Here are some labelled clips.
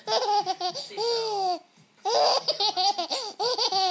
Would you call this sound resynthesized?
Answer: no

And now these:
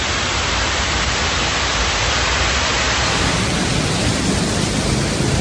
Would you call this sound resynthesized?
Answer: no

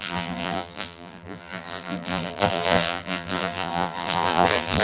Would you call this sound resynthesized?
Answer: yes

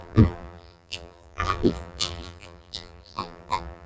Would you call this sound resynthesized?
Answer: yes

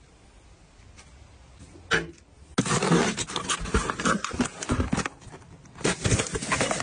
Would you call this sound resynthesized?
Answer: no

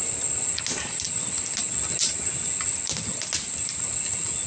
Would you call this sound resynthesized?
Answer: no